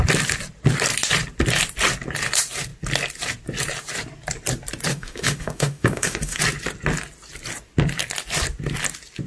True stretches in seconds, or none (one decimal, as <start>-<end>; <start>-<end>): 0.0-4.9; 6.4-9.3